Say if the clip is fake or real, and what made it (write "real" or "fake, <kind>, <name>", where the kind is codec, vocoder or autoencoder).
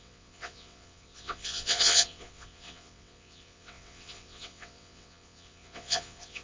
fake, vocoder, WaveNeXt